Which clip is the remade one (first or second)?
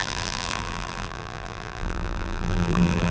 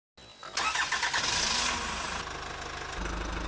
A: first